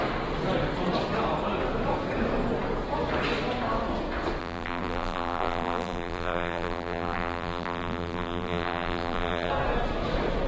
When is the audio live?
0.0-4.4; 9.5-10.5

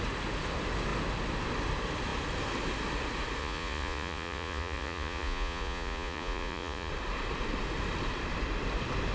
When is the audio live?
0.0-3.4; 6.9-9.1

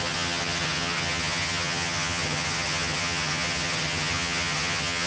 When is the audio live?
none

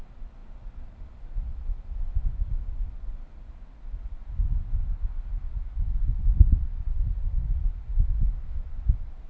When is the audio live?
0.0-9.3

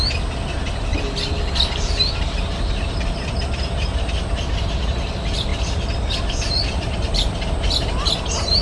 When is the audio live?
0.0-8.6

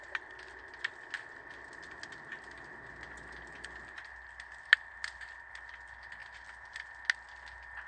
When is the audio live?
0.0-7.9

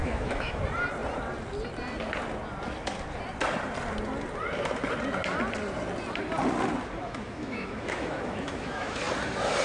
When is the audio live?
0.6-7.0; 9.0-9.6

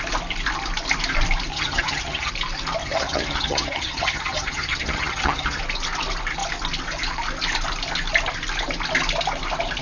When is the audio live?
0.0-1.5; 2.3-2.8; 5.6-9.8